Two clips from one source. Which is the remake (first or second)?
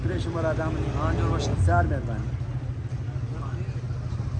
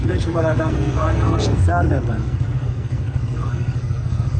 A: second